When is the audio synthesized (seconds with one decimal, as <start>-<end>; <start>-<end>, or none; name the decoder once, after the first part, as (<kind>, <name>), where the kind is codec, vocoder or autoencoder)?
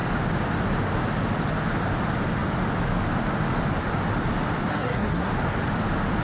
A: 4.7-5.3 (codec, SNAC)